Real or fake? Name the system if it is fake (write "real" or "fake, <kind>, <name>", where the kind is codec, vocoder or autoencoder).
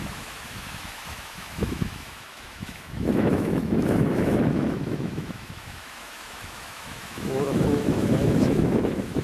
fake, autoencoder, DAC-VAE